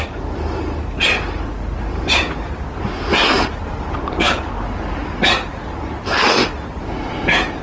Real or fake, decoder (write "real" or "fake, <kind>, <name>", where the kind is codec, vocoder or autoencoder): real